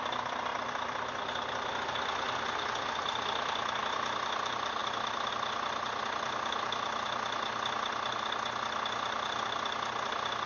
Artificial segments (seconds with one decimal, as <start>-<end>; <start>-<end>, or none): none